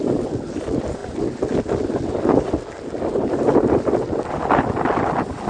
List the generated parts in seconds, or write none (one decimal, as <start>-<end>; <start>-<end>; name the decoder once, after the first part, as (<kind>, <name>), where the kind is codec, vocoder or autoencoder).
none